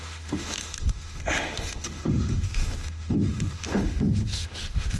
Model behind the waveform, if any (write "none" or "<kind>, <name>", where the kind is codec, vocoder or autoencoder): autoencoder, DAC-VAE